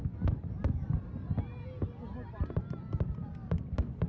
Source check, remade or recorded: recorded